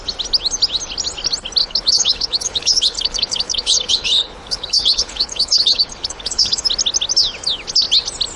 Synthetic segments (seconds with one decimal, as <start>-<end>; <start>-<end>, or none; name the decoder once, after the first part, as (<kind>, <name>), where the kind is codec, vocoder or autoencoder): 1.6-6.6 (codec, HILCodec)